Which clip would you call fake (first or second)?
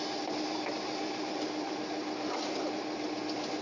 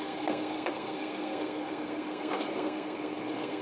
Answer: second